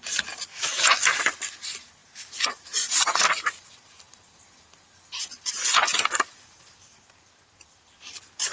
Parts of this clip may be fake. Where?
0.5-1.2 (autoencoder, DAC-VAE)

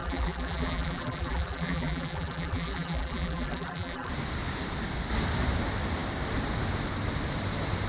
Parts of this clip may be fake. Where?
0.0-4.1 (vocoder, BigVGAN v2)

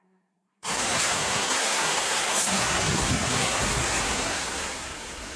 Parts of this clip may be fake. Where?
0.0-5.4 (codec, SNAC)

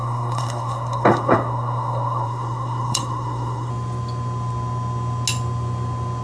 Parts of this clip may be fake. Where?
0.0-3.7 (codec, SNAC)